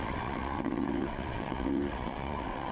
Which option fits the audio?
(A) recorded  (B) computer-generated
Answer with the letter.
B